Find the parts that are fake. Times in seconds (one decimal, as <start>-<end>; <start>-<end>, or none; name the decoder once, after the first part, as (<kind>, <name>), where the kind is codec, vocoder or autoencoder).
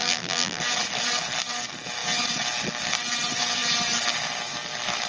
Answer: 0.0-0.6 (vocoder, BigVGAN v2)